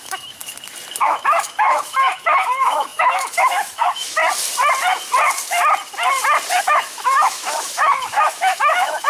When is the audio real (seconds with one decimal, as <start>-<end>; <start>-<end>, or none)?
0.4-1.0; 4.2-6.6